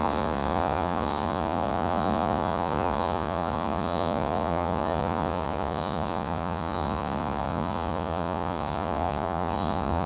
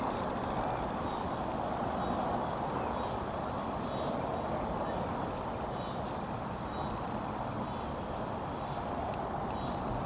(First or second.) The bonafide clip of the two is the second